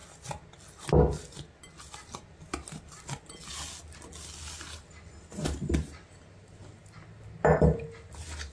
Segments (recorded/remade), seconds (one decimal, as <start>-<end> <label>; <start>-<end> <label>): 0.0-8.5 recorded